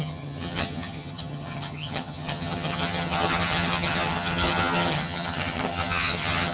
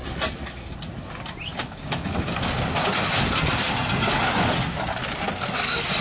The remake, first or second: first